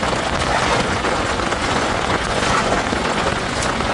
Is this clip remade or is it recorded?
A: remade